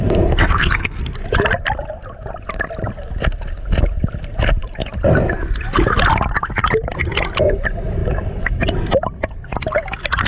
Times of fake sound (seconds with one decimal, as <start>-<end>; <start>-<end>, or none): 0.4-1.0